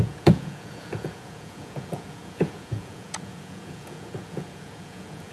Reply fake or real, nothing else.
fake